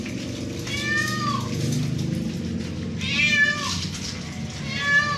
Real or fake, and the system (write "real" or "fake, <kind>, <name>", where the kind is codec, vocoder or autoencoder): real